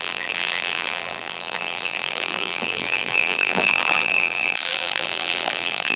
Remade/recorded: remade